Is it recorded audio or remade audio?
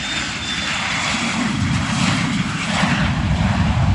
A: remade